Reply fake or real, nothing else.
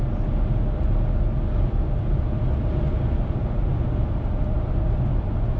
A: real